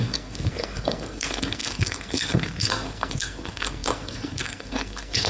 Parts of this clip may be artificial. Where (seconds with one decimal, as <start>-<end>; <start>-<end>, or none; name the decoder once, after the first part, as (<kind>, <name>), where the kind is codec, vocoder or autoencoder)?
0.0-5.3 (codec, SNAC)